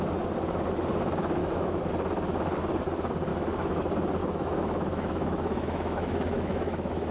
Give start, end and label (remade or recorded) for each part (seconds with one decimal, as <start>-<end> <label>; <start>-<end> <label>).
0.0-1.4 recorded; 1.4-1.9 remade; 1.9-3.3 recorded; 3.3-3.8 remade; 3.8-4.2 recorded; 4.2-7.1 remade

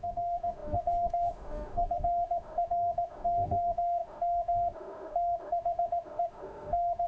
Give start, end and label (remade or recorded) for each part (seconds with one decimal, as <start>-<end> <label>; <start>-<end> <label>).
0.0-7.1 remade

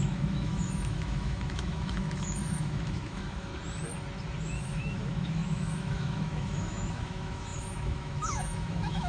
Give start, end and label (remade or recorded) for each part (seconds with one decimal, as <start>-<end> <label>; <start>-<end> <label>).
0.0-3.5 remade; 3.5-4.4 recorded; 4.4-9.1 remade